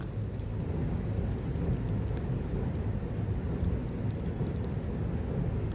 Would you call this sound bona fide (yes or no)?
yes